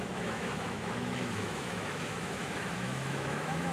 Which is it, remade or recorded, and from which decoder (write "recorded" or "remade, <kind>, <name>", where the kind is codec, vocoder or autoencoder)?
remade, autoencoder, DAC-VAE